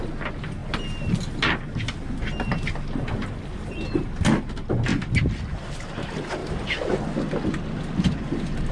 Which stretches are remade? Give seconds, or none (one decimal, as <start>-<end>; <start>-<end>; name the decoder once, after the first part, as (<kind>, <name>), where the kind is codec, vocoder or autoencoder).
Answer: none